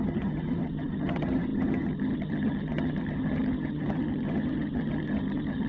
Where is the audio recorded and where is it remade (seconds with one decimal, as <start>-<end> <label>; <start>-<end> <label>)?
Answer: 0.0-5.7 remade